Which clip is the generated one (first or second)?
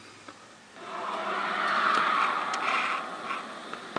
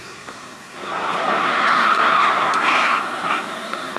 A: second